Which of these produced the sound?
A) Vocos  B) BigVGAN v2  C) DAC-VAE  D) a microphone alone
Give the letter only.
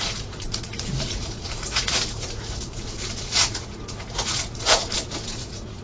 A